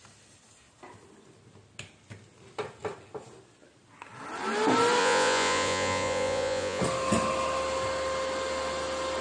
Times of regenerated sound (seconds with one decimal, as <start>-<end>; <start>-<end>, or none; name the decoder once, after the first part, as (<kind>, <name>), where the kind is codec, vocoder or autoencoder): 5.0-6.8 (vocoder, Vocos)